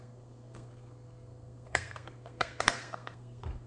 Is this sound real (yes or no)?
no